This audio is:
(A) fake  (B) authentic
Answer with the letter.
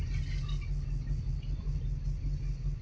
B